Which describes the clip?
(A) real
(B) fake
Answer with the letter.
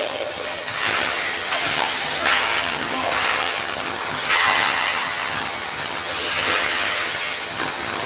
B